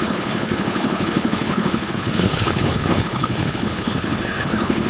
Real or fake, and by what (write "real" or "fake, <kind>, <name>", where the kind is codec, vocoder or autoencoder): fake, codec, HILCodec